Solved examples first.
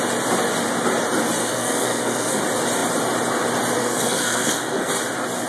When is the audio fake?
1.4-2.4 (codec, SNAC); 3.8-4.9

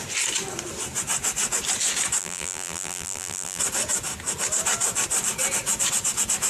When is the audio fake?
2.2-3.6 (vocoder, BigVGAN v2)

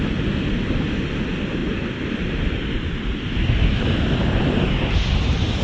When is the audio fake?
none

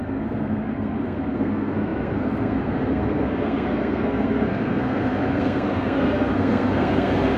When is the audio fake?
0.0-7.4 (codec, SNAC)

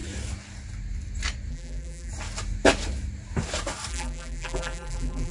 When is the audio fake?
1.5-2.1 (vocoder, BigVGAN v2); 3.9-5.3

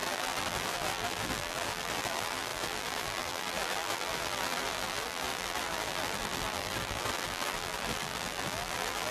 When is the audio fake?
0.0-9.1 (vocoder, BigVGAN v2)